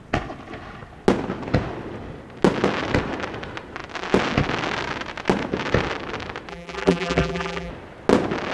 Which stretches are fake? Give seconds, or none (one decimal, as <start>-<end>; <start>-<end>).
6.5-7.7